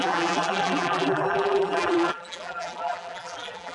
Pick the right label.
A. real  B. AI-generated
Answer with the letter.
B